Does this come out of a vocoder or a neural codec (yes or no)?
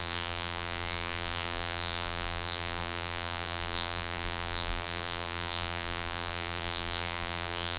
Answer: yes